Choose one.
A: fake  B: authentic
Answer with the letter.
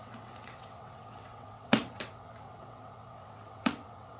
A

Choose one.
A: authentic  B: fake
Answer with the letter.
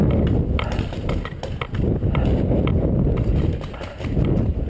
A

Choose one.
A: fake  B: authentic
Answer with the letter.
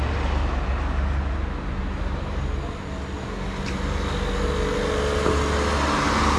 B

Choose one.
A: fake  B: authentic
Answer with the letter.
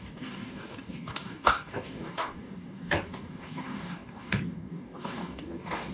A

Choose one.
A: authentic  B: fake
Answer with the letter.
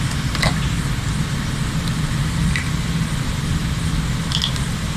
B